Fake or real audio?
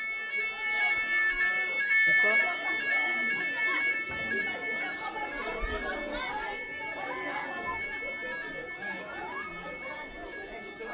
real